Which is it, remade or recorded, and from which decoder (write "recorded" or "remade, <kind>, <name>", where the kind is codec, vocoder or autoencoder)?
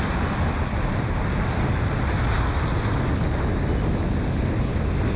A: recorded